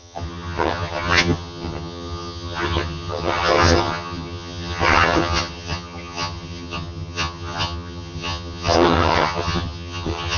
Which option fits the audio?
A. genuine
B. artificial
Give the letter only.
B